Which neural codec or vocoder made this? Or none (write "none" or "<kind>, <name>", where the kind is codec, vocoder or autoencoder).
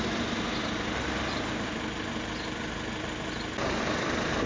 none